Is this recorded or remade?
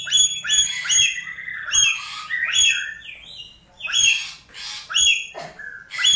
recorded